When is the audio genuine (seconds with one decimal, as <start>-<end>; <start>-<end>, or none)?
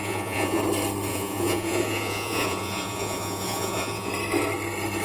0.6-1.1; 4.1-5.0